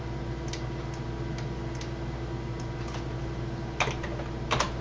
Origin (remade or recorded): recorded